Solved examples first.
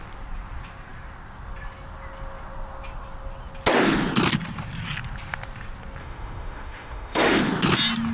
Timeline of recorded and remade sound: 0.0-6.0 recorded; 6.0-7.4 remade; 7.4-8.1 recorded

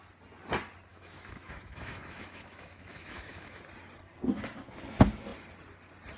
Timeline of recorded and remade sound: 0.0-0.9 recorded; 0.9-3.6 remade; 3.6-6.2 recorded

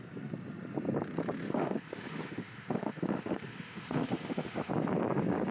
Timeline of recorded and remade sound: 0.0-1.4 recorded; 1.4-4.7 remade; 4.7-5.5 recorded

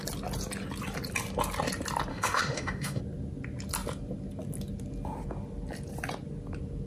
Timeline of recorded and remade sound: 0.0-2.1 recorded; 2.1-3.0 remade; 3.0-6.9 recorded